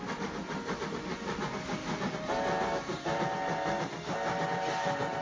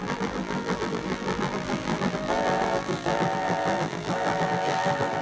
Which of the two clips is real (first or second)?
first